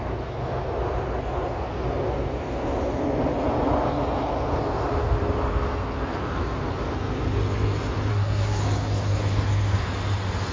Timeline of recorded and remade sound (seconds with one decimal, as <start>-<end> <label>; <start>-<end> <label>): 0.0-8.1 recorded; 8.1-8.6 remade; 8.6-10.5 recorded

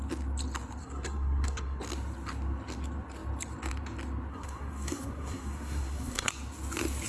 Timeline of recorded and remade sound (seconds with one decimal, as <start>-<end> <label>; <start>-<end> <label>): 0.0-0.8 recorded; 0.8-1.8 remade; 1.8-4.3 recorded; 4.3-6.3 remade; 6.3-7.1 recorded

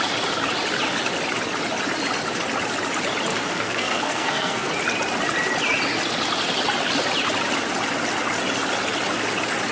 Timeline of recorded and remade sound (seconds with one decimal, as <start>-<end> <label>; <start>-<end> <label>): 0.0-3.3 recorded; 3.3-4.7 remade; 4.7-9.7 recorded

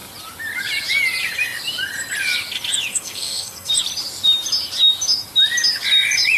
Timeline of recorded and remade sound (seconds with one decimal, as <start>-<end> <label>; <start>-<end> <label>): 0.0-2.9 recorded; 2.9-3.7 remade; 3.7-6.4 recorded

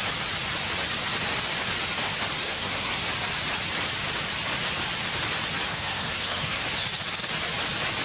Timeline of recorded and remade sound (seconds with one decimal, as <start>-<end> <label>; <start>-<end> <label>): 0.0-2.4 recorded; 2.4-3.0 remade; 3.0-5.7 recorded; 5.7-6.6 remade; 6.6-8.0 recorded

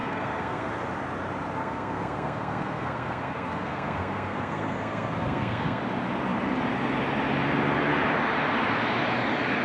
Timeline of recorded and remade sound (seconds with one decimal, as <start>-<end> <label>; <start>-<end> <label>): 0.0-0.7 remade; 0.7-1.6 recorded; 1.6-5.8 remade; 5.8-9.6 recorded

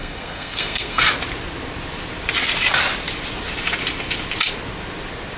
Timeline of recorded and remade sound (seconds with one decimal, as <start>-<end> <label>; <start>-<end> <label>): 0.0-1.0 remade; 1.0-5.4 recorded

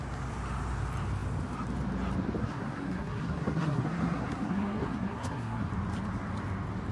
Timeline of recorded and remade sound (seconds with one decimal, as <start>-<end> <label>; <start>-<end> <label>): 0.0-2.4 recorded; 2.4-5.7 remade; 5.7-6.9 recorded